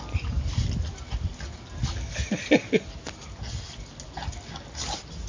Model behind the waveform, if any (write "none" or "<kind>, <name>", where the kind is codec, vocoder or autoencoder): none